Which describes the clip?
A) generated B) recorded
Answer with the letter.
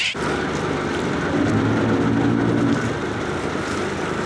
B